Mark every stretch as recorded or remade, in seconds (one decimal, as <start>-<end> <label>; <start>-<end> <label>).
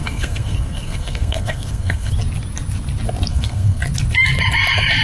0.0-2.1 remade; 2.1-3.3 recorded; 3.3-3.8 remade; 3.8-5.0 recorded